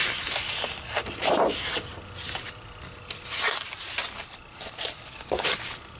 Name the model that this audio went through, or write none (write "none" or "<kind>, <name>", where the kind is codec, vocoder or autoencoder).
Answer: none